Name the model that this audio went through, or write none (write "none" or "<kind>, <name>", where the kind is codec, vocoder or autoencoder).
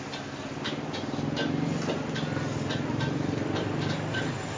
none